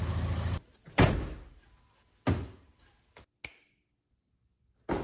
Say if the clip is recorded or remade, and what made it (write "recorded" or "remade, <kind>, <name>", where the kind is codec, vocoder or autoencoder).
recorded